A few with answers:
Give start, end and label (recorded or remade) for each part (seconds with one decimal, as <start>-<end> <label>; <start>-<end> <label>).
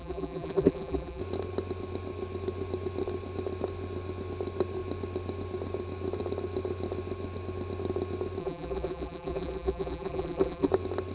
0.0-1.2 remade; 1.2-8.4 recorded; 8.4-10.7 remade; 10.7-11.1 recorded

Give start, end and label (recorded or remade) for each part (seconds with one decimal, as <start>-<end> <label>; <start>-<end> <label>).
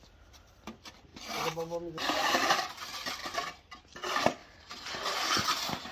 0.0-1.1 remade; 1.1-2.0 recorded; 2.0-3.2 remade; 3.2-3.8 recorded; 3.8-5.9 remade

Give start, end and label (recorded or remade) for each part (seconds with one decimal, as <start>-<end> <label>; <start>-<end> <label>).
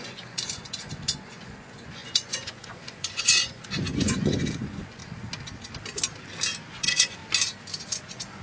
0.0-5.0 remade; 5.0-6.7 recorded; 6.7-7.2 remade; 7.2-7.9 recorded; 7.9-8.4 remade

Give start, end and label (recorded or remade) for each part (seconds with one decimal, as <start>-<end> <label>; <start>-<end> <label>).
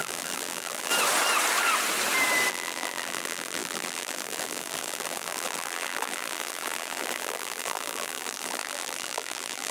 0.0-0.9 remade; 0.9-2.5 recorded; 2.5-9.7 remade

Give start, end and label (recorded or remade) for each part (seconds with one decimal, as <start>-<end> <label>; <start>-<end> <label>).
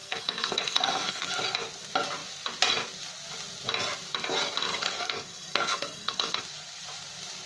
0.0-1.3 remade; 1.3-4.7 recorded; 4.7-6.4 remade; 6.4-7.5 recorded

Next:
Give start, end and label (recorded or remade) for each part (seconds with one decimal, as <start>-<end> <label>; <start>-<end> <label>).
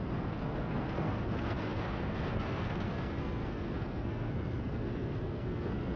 0.0-6.0 remade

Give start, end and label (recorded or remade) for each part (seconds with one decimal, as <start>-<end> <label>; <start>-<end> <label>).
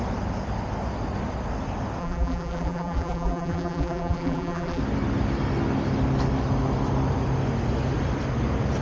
0.0-2.0 recorded; 2.0-4.8 remade; 4.8-8.8 recorded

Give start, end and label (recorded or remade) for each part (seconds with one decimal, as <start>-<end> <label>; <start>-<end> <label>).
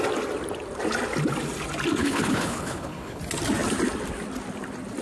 0.0-2.0 recorded; 2.0-3.2 remade; 3.2-5.0 recorded